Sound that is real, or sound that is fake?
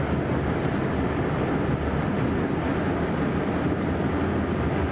real